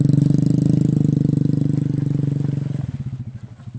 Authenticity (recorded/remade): recorded